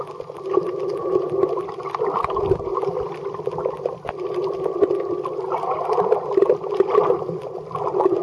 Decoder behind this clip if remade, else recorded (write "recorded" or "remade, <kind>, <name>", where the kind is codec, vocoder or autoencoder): recorded